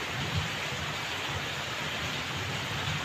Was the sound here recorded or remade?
recorded